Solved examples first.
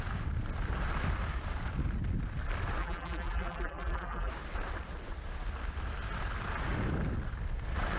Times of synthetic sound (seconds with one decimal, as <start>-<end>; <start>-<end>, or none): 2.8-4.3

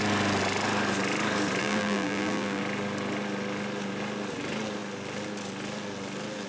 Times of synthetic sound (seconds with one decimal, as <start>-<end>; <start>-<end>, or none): 1.6-2.6

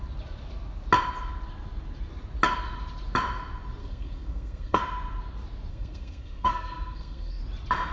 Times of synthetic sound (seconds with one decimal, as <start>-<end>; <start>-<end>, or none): 3.8-4.8; 5.7-7.4

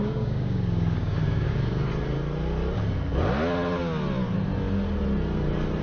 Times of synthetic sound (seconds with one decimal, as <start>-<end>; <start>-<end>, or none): 0.0-1.9

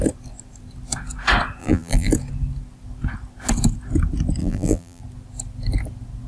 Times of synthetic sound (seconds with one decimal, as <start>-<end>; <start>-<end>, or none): 1.6-2.1; 4.4-5.0

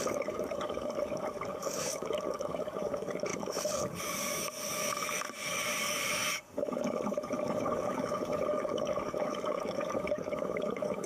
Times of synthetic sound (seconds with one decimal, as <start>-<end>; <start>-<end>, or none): 0.0-11.1

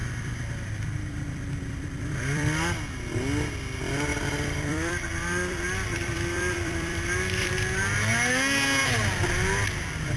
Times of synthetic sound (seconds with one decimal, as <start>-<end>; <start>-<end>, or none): 0.0-2.8; 4.1-7.5